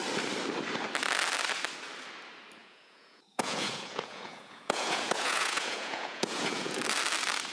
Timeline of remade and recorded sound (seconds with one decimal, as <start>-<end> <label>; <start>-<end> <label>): 0.0-2.6 recorded; 2.6-6.8 remade; 6.8-7.5 recorded